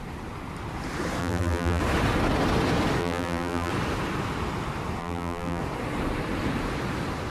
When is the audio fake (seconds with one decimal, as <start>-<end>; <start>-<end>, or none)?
1.2-1.8; 3.0-3.7; 5.0-5.6